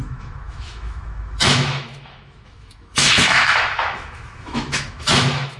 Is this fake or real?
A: fake